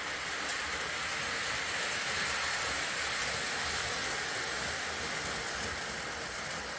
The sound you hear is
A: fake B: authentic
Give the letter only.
B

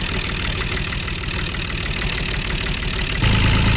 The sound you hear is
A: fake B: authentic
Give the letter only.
B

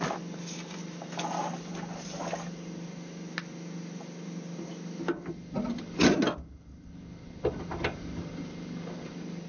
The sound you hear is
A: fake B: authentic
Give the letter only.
B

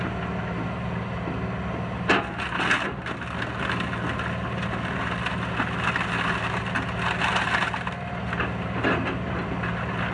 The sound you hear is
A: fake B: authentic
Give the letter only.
B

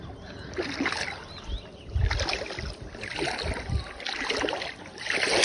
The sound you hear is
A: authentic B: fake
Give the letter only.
A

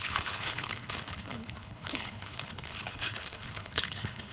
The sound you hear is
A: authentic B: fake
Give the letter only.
B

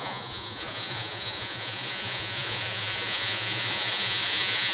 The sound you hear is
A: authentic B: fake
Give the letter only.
B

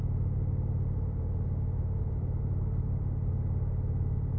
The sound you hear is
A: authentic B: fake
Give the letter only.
A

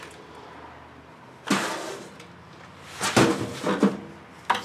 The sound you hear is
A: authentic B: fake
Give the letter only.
A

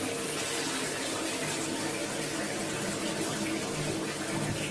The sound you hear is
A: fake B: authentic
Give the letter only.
B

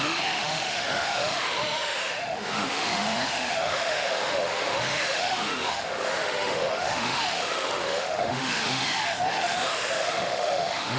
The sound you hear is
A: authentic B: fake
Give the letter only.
B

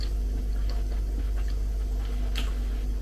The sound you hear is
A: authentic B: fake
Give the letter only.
A